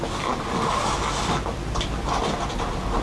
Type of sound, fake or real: real